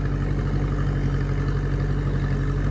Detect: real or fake real